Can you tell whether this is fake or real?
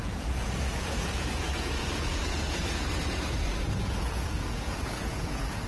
fake